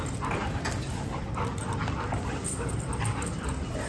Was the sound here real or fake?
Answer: real